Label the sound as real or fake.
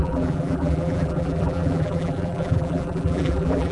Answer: fake